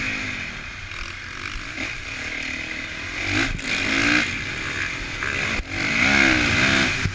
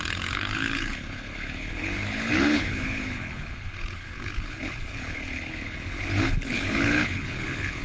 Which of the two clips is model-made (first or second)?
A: second